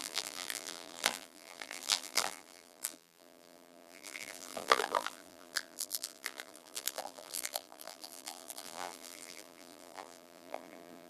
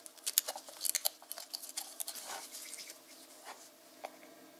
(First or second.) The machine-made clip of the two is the first